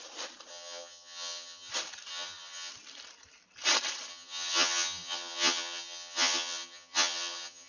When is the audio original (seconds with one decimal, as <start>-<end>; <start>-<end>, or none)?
0.0-0.5; 1.7-2.1; 2.7-4.1